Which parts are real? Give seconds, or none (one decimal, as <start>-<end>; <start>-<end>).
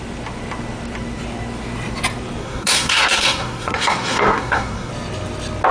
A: 0.0-2.4; 4.9-5.7